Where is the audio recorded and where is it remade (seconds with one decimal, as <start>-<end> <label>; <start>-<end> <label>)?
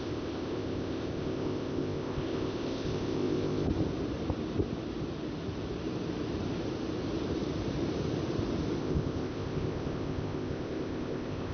0.0-3.7 remade; 3.7-8.8 recorded; 8.8-11.5 remade